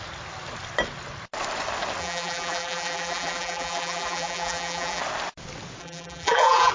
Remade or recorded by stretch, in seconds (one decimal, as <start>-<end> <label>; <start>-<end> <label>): 0.0-2.0 recorded; 2.0-5.0 remade; 5.0-5.8 recorded; 5.8-6.7 remade